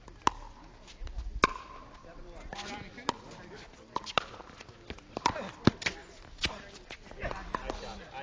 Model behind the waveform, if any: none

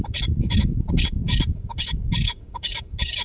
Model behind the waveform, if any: codec, DAC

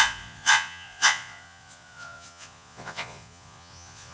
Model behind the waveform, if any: vocoder, Vocos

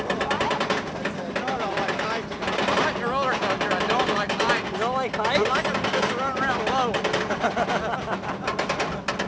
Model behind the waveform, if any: none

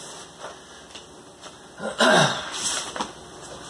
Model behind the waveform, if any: none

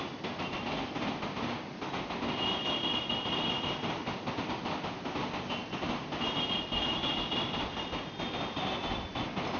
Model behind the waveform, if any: none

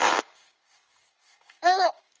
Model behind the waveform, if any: codec, DAC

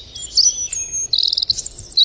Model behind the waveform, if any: none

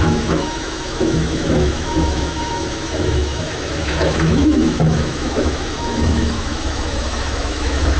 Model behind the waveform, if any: autoencoder, DAC-VAE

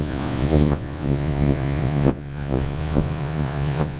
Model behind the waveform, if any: vocoder, Vocos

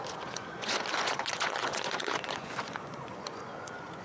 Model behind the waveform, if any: vocoder, Vocos